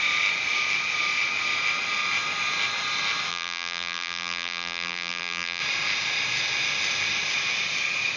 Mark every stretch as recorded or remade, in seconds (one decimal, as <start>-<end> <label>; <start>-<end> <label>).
0.0-3.3 recorded; 3.3-5.6 remade; 5.6-8.2 recorded